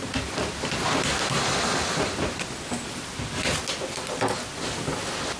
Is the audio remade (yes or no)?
no